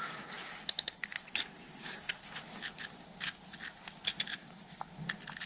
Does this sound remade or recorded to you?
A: recorded